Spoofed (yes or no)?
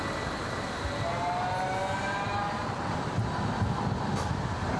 no